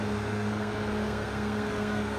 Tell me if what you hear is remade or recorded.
remade